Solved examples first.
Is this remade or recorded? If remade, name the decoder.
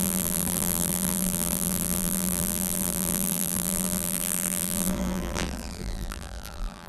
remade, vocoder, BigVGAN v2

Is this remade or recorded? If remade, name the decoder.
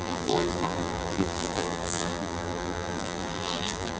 remade, vocoder, BigVGAN v2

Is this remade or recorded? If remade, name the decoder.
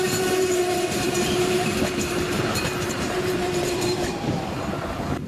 remade, vocoder, BigVGAN v2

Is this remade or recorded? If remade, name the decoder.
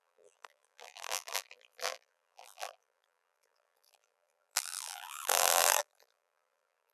remade, vocoder, BigVGAN v2